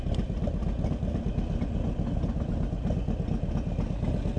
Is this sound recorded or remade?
recorded